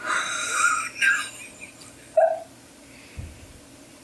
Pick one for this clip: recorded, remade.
remade